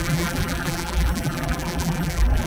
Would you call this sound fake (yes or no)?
yes